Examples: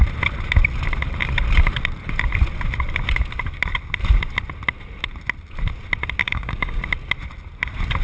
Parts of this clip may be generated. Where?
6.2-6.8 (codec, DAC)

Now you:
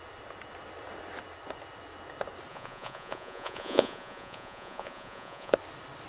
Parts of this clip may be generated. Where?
2.5-5.5 (vocoder, Vocos)